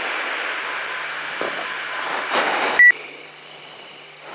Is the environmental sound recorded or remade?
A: recorded